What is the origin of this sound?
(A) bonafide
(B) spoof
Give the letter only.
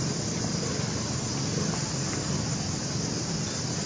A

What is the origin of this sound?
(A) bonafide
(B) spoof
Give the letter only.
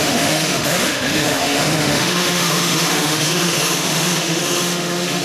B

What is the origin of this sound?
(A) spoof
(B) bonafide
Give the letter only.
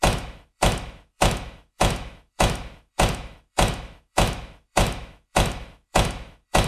A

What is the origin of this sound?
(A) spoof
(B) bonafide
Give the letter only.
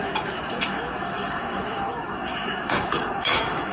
A